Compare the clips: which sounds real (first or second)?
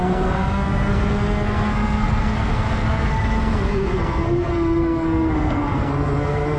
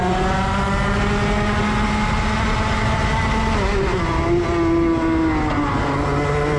second